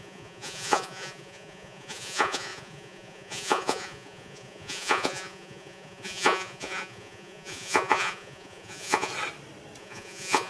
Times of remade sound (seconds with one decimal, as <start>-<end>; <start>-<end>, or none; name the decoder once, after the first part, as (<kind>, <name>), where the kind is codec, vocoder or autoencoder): 0.0-9.1 (vocoder, Vocos); 9.8-10.5